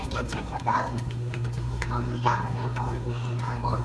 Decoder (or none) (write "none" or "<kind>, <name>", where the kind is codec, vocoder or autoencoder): codec, SNAC